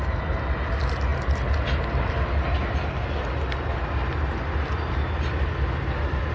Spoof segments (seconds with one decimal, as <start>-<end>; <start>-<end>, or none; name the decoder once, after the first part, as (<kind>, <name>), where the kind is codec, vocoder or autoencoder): none